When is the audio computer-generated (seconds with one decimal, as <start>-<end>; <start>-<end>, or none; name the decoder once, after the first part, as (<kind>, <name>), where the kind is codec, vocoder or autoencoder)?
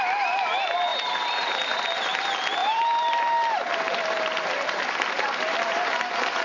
0.9-1.8 (vocoder, BigVGAN v2); 2.6-6.0